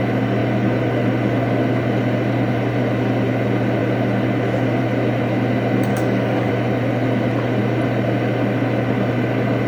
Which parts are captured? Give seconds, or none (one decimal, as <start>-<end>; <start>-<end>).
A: 0.0-5.9; 6.5-9.7